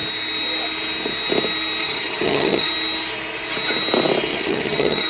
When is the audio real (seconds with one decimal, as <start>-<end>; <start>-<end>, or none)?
0.0-1.8; 2.7-4.3